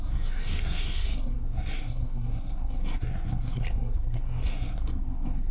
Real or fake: fake